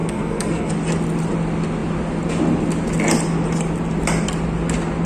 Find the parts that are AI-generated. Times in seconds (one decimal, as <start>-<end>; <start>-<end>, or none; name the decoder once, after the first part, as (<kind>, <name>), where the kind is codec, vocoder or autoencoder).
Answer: 0.0-0.7 (codec, SNAC)

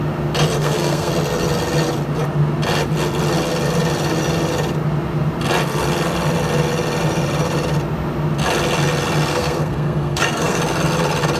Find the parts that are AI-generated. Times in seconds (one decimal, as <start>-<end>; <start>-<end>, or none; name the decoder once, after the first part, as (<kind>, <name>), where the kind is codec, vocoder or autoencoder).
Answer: 0.6-1.1 (codec, SNAC); 9.3-10.6

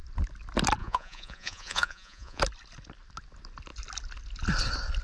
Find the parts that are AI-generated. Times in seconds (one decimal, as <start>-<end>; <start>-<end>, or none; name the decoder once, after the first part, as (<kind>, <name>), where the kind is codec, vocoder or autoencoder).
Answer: 0.8-2.4 (vocoder, Vocos)

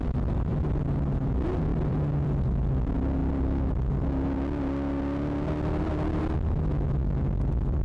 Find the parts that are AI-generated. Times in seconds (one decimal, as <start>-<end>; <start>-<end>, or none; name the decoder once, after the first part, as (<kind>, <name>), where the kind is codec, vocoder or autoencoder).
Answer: 0.5-1.1 (vocoder, BigVGAN v2); 1.7-2.7

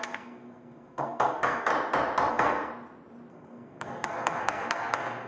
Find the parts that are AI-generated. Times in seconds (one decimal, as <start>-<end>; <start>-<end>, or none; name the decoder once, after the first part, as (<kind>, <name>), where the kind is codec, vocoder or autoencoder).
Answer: 0.0-1.7 (codec, SNAC); 2.3-2.7; 3.3-5.3

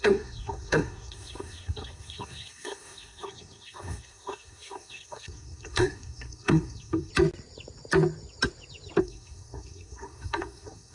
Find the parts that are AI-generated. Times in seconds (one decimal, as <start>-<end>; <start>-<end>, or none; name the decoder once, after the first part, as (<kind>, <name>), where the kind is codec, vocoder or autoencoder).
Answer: 0.0-7.1 (codec, SNAC); 9.0-10.9